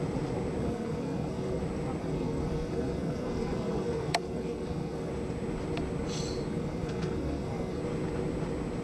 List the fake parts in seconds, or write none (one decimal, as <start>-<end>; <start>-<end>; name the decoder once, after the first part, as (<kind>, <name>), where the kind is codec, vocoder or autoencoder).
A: 0.6-1.6 (codec, SNAC); 2.0-5.1; 6.5-7.8